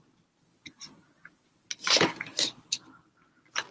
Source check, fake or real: real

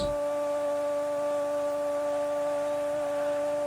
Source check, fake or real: real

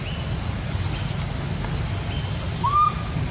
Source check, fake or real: real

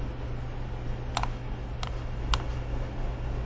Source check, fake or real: real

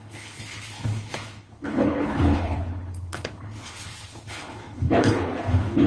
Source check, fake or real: fake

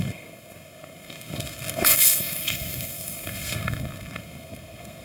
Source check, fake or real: fake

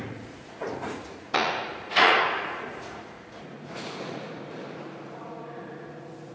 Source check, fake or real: fake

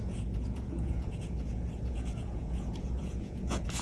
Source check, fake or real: fake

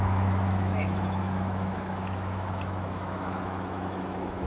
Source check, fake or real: fake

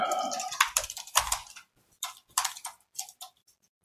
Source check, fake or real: fake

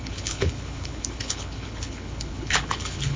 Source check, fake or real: fake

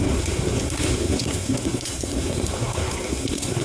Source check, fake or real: fake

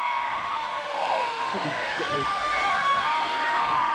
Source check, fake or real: fake